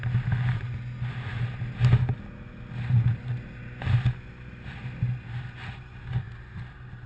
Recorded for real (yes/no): yes